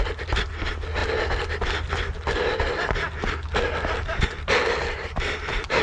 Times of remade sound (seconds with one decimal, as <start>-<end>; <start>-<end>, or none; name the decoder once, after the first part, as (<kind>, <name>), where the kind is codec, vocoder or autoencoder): none